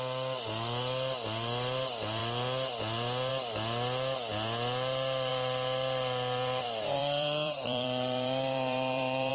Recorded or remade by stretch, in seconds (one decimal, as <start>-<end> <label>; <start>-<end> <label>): 0.0-5.3 recorded; 5.3-9.3 remade